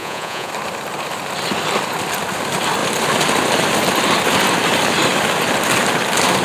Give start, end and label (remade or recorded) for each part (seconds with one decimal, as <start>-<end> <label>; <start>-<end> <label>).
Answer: 0.0-0.5 remade; 0.5-6.4 recorded